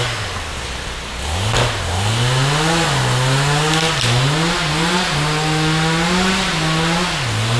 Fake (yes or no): no